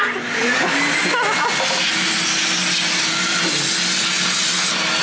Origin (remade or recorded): recorded